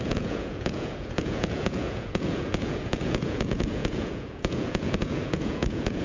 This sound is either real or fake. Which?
fake